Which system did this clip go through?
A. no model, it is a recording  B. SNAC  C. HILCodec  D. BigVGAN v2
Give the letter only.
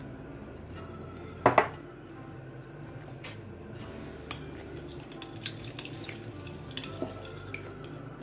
A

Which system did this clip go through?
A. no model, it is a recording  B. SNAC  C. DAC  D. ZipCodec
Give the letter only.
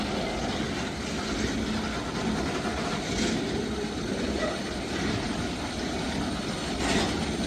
A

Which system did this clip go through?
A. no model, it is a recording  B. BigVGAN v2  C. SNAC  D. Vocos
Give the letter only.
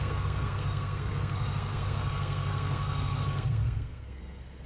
C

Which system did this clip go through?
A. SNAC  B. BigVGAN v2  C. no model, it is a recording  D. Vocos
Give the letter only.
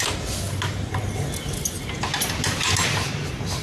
C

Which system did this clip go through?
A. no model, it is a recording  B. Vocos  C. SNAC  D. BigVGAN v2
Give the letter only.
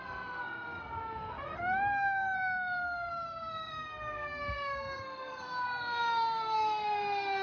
C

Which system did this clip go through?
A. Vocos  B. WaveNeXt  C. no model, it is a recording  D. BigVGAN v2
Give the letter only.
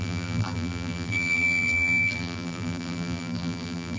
D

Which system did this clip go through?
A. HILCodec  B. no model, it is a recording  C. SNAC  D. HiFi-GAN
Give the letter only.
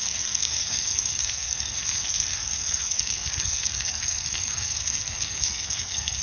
C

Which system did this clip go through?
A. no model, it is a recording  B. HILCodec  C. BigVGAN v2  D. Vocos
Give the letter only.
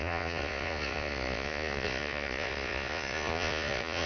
D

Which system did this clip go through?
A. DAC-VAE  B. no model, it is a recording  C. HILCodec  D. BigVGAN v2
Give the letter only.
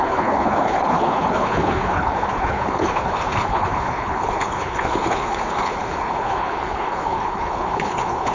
C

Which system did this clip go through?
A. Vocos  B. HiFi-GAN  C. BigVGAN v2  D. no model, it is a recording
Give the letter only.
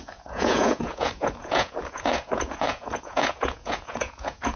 A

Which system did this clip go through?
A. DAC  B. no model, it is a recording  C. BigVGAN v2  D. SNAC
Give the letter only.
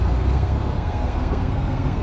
D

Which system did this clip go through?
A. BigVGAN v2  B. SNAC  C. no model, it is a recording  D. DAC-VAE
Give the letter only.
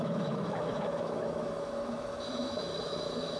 D